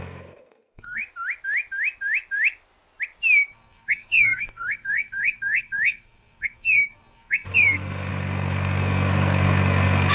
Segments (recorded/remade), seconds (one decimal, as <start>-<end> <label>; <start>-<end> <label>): 0.0-1.0 remade; 1.0-3.5 recorded; 3.5-10.1 remade